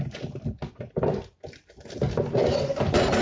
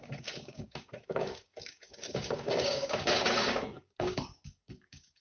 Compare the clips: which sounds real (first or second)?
first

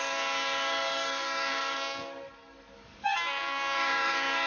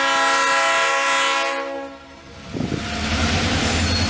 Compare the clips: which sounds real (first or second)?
second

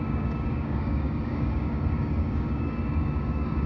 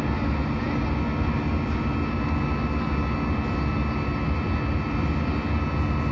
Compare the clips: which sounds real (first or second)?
second